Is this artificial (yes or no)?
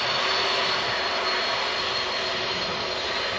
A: yes